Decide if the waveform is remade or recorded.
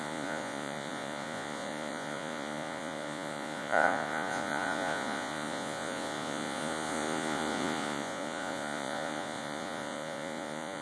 remade